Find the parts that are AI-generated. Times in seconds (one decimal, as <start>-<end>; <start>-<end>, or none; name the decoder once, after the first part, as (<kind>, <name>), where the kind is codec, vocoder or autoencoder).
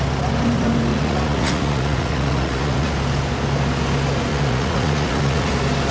0.9-2.9 (vocoder, Vocos); 4.3-5.5